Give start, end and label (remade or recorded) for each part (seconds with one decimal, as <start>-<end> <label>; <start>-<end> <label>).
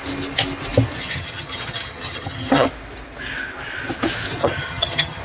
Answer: 0.0-1.0 recorded; 1.0-2.7 remade; 2.7-4.4 recorded; 4.4-5.2 remade